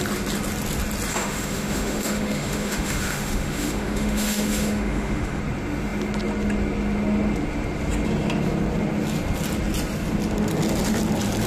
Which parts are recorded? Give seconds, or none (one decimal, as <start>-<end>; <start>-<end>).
0.0-1.1; 5.4-11.5